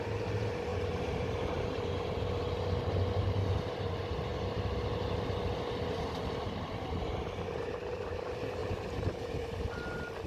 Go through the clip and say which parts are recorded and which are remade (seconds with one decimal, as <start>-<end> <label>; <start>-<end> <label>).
0.0-0.7 recorded; 0.7-2.4 remade; 2.4-8.6 recorded; 8.6-9.8 remade; 9.8-10.3 recorded